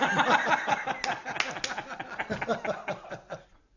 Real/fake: real